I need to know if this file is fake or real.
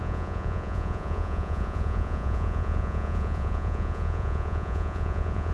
fake